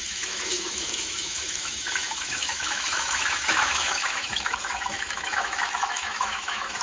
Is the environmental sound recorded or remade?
remade